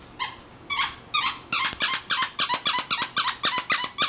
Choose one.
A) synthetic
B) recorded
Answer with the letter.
B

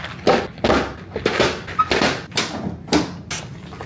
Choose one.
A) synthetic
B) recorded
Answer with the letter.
B